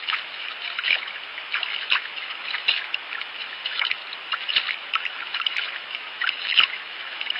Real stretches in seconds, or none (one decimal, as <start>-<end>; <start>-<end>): 4.0-4.8